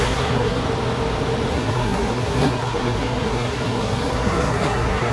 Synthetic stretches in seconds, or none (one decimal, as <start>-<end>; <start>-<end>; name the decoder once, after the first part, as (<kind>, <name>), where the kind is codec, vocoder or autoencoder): 0.0-0.6 (codec, SNAC); 1.5-5.1